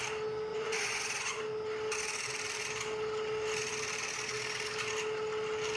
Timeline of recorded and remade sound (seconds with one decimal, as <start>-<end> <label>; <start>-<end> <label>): 0.0-0.5 recorded; 0.5-1.4 remade; 1.4-5.8 recorded